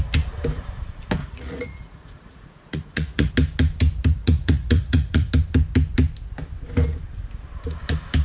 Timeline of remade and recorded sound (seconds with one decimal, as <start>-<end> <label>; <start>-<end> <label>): 0.0-1.2 recorded; 1.2-3.3 remade; 3.3-4.2 recorded; 4.2-5.3 remade; 5.3-8.2 recorded